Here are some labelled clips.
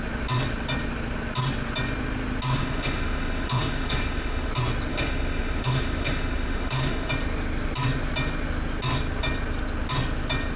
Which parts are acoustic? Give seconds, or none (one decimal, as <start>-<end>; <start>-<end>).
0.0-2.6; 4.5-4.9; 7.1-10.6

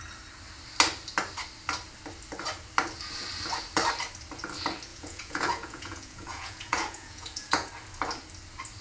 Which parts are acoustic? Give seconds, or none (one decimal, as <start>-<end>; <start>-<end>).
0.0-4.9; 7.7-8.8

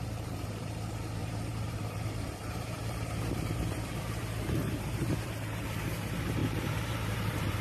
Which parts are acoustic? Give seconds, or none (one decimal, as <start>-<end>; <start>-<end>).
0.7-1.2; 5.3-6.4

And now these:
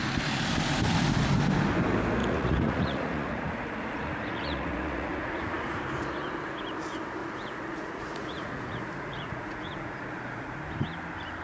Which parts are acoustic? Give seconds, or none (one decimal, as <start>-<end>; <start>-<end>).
0.0-2.2; 5.8-7.2; 10.6-11.4